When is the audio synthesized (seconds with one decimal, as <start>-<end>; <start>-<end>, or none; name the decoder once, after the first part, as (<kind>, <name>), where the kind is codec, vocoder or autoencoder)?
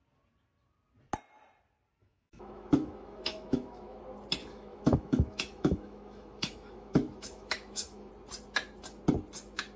2.0-4.0 (autoencoder, DAC-VAE); 4.4-8.1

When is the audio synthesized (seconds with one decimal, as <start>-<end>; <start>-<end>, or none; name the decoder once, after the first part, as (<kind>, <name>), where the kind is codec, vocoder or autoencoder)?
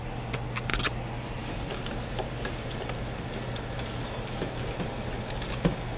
none